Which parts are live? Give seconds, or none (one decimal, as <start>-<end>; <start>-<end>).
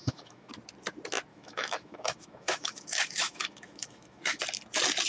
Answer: 0.5-1.3; 4.4-5.1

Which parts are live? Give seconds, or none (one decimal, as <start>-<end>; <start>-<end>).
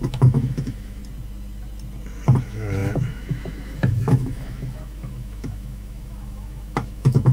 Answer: 1.0-2.4